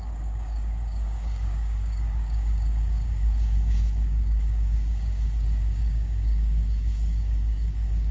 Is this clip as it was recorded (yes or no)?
no